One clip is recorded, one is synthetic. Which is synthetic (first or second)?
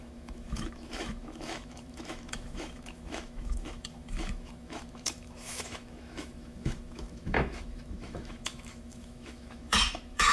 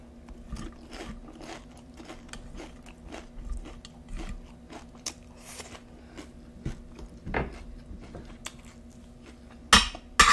first